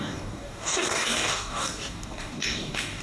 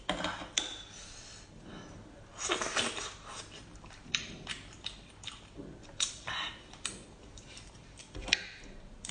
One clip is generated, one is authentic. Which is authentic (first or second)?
second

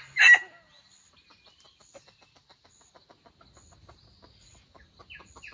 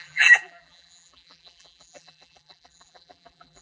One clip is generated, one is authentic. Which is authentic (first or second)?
first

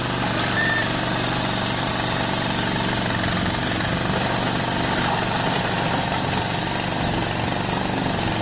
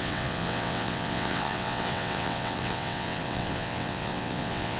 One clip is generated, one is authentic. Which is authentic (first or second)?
first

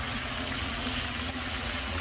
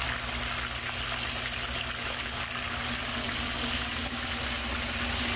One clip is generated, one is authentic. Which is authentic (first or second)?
second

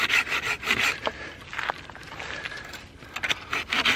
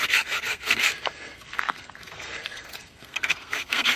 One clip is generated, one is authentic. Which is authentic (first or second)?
first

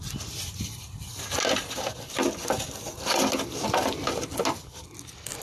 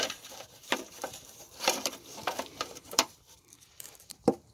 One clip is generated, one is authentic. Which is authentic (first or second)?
first